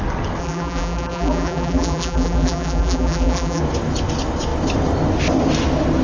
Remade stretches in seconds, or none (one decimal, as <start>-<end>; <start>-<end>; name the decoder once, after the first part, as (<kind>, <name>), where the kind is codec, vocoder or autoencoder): 0.4-3.6 (vocoder, BigVGAN v2)

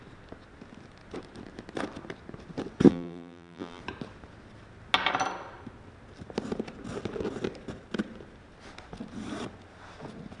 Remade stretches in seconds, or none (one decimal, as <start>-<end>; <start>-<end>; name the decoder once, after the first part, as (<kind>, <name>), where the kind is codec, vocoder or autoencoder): 2.9-3.8 (vocoder, BigVGAN v2)

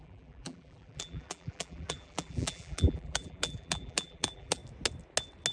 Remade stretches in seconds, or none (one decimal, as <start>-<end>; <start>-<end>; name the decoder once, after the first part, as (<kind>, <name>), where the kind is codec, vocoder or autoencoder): 0.0-4.6 (vocoder, BigVGAN v2)

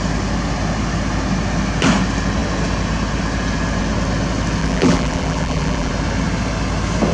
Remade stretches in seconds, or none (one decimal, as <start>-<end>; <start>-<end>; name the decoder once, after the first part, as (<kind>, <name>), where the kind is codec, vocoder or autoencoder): 4.6-5.9 (vocoder, BigVGAN v2)

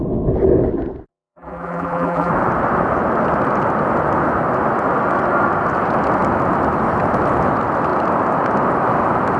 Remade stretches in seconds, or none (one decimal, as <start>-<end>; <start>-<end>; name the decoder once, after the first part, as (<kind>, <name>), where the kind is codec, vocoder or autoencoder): 1.1-2.3 (vocoder, BigVGAN v2)